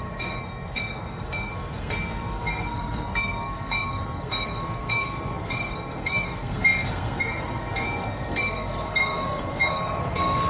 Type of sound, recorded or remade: remade